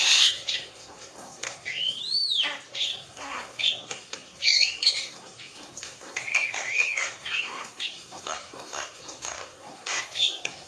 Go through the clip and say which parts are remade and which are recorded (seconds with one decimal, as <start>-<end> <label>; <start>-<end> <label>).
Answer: 0.0-2.0 remade; 2.0-2.7 recorded; 2.7-10.7 remade